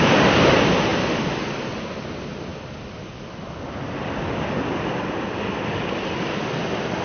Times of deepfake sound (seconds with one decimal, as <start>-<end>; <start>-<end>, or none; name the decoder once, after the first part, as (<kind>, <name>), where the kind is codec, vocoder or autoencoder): none